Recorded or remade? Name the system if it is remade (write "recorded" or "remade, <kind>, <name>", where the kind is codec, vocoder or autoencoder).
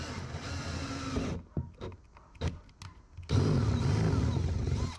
recorded